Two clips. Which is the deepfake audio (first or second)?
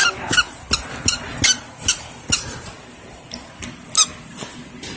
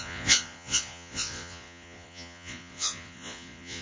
second